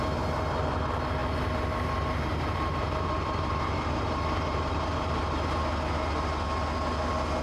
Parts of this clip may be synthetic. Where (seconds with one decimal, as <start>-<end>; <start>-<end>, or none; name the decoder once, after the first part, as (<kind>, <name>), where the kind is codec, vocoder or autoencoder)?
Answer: 1.2-5.6 (vocoder, BigVGAN v2)